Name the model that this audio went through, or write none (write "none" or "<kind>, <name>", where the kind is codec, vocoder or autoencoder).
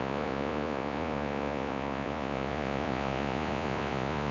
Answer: vocoder, Vocos